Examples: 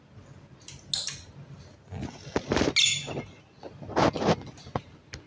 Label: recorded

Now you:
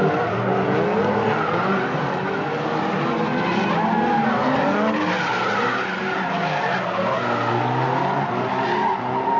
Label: recorded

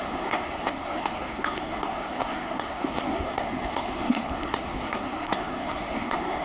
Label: remade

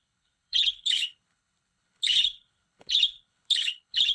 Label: remade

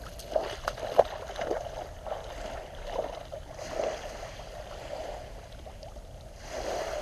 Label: recorded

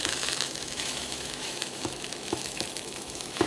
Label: remade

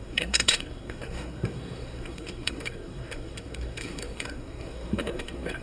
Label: remade